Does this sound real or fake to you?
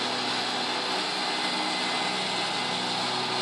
real